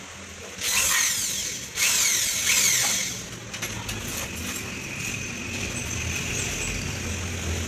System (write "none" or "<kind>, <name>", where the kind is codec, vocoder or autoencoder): none